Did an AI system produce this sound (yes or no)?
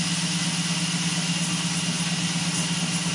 no